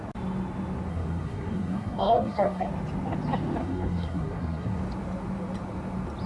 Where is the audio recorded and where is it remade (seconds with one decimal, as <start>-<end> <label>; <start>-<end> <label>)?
0.0-0.9 recorded; 0.9-2.7 remade; 2.7-3.6 recorded; 3.6-4.8 remade; 4.8-6.3 recorded

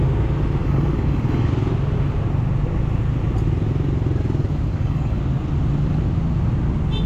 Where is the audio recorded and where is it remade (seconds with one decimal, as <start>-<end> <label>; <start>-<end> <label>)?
0.0-0.6 recorded; 0.6-1.5 remade; 1.5-4.7 recorded; 4.7-5.2 remade; 5.2-7.1 recorded

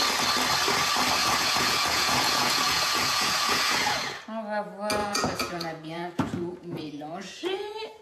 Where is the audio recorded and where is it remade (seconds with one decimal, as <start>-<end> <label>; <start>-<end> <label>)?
0.0-1.2 recorded; 1.2-4.2 remade; 4.2-5.0 recorded; 5.0-8.0 remade

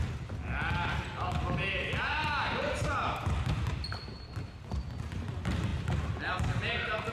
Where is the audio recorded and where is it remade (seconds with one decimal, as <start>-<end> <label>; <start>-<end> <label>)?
0.0-7.1 recorded

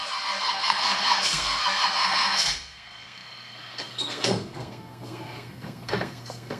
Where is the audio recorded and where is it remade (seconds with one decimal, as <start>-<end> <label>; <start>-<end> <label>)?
0.0-6.6 remade

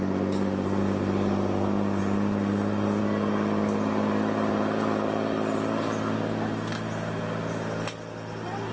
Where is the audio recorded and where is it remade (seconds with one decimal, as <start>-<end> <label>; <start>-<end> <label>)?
0.0-8.7 recorded

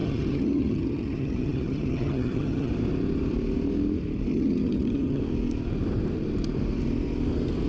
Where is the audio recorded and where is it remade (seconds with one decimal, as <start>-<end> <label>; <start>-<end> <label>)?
0.0-2.7 remade; 2.7-4.3 recorded; 4.3-5.2 remade; 5.2-7.7 recorded